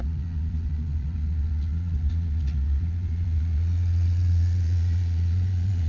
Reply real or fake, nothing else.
fake